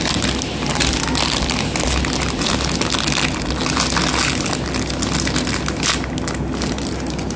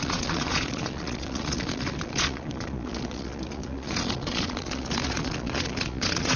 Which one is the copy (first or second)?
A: second